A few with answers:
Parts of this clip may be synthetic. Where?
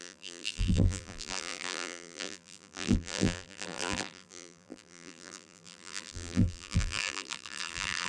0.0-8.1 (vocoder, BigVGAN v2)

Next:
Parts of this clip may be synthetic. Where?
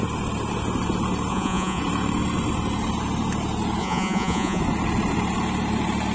1.3-1.8 (vocoder, Vocos); 3.8-4.6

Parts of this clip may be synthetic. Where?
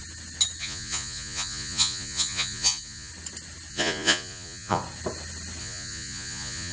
0.6-3.1 (vocoder, Vocos); 3.7-4.8; 5.6-6.7